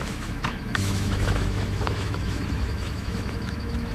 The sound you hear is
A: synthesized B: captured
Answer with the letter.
A